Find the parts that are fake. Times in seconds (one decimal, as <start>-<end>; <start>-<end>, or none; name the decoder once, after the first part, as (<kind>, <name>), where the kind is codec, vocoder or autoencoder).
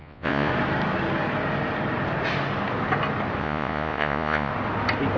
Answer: 0.0-0.5 (vocoder, Vocos); 3.4-4.5